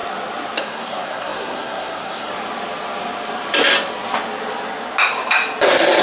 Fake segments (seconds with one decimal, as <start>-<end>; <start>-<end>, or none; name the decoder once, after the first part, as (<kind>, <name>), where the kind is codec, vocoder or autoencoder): 0.6-2.3 (codec, SNAC)